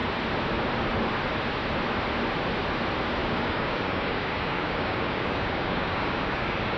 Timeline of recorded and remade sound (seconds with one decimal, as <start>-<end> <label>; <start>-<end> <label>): 0.0-3.2 recorded; 3.2-6.8 remade